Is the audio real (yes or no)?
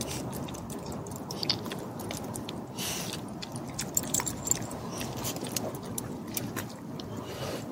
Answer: yes